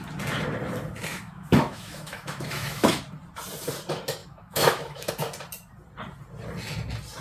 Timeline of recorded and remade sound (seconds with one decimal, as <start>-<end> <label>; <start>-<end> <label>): 0.0-1.1 recorded; 1.1-3.0 remade; 3.0-4.2 recorded; 4.2-5.1 remade; 5.1-7.2 recorded